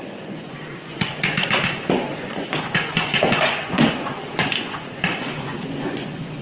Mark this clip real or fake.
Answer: fake